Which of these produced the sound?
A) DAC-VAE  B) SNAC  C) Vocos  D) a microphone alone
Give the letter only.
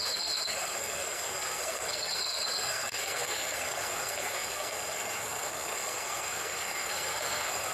B